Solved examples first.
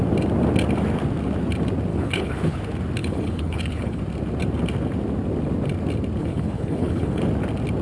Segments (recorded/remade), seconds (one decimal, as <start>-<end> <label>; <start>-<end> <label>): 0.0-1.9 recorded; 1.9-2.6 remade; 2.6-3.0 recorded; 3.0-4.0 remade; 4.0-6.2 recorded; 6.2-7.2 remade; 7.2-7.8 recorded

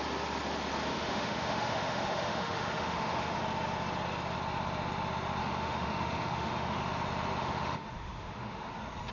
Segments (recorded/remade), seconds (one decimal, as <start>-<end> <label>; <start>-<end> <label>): 0.0-0.9 recorded; 0.9-3.4 remade; 3.4-5.4 recorded; 5.4-6.8 remade; 6.8-7.4 recorded; 7.4-8.7 remade; 8.7-9.1 recorded

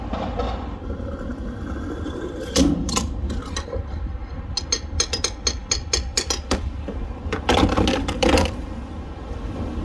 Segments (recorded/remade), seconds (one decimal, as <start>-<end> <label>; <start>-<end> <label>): 0.0-9.8 recorded

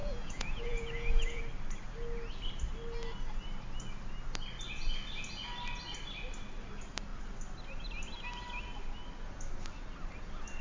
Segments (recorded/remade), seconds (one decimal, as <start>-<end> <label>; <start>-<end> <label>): 0.0-1.4 remade; 1.4-10.6 recorded

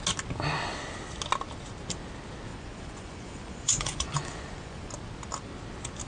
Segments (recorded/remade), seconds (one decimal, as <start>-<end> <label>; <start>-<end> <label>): 0.0-2.5 recorded; 2.5-4.9 remade; 4.9-6.1 recorded